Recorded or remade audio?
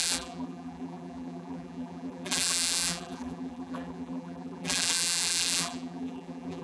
remade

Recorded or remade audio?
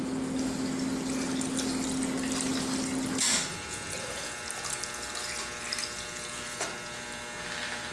recorded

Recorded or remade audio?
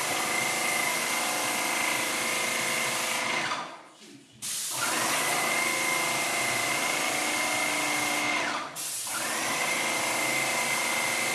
recorded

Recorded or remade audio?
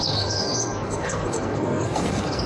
remade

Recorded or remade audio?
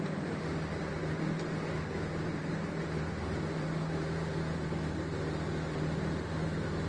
remade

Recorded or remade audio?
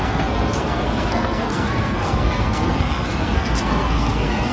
remade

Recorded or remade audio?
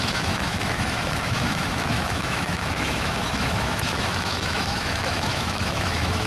remade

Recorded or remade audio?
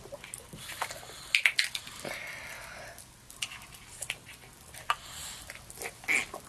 recorded